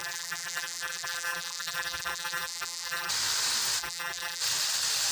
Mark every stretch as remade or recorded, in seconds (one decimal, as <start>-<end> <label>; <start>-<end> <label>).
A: 0.0-3.1 remade; 3.1-3.8 recorded; 3.8-4.4 remade; 4.4-5.1 recorded